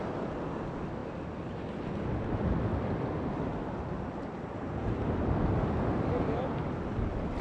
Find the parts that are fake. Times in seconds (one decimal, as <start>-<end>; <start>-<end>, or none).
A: none

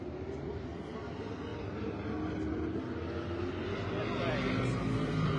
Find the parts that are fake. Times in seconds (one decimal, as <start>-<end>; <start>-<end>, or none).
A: none

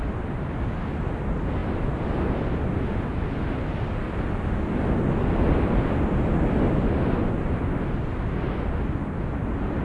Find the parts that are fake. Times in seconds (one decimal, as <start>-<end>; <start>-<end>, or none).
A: none

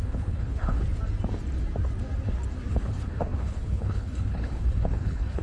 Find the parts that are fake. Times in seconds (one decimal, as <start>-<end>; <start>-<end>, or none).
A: 0.0-0.8; 2.7-5.4

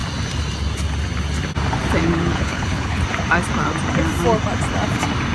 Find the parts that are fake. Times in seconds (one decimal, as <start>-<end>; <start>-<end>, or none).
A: 2.0-3.0

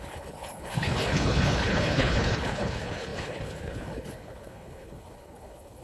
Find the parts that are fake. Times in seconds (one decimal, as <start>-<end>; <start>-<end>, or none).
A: 0.0-5.8